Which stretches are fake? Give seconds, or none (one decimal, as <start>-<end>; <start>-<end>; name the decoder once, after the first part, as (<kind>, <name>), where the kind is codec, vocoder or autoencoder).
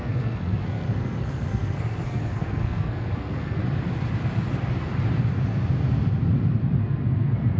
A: 0.0-3.6 (codec, SNAC); 6.8-7.6